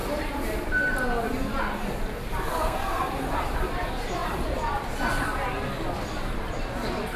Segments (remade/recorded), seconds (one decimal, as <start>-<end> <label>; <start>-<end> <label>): 0.0-2.5 recorded; 2.5-3.1 remade; 3.1-7.2 recorded